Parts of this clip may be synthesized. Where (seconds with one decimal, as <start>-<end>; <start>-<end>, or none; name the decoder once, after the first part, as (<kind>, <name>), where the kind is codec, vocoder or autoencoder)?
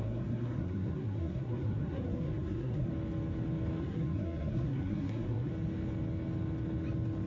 0.0-2.9 (codec, SNAC); 3.8-5.5